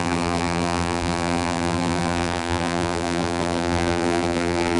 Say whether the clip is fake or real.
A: fake